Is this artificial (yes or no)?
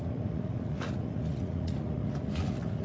yes